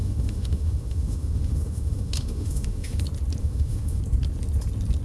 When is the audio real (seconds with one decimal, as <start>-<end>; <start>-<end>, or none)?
3.0-3.4; 4.0-5.0

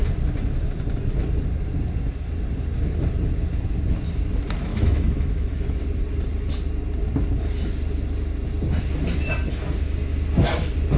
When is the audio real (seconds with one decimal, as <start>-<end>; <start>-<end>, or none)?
0.0-4.7; 5.8-11.0

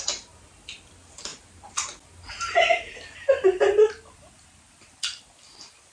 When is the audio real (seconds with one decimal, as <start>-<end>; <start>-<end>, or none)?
0.0-5.9

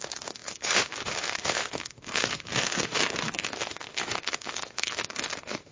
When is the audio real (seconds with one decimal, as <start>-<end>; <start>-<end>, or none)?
none

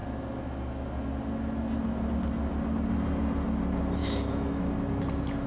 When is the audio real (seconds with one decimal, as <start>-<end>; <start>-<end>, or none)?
0.0-4.0; 4.7-5.5